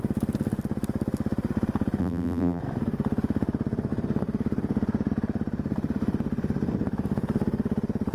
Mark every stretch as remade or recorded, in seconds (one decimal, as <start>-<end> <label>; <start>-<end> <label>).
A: 0.0-2.0 recorded; 2.0-2.6 remade; 2.6-8.1 recorded